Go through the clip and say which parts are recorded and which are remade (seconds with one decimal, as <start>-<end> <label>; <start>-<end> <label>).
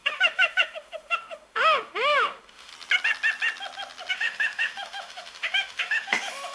0.0-2.7 remade; 2.7-4.1 recorded; 4.1-6.5 remade